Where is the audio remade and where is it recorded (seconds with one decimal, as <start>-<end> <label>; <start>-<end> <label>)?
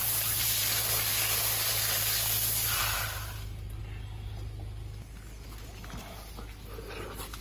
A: 0.0-0.7 remade; 0.7-7.4 recorded